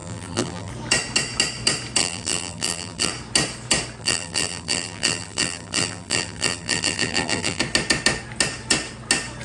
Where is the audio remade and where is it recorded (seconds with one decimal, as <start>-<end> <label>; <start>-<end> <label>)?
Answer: 0.0-0.7 remade; 0.7-2.0 recorded; 2.0-3.1 remade; 3.1-4.0 recorded; 4.0-7.6 remade; 7.6-9.4 recorded